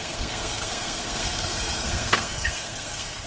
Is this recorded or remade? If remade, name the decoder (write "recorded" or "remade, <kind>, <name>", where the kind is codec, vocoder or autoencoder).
remade, codec, SNAC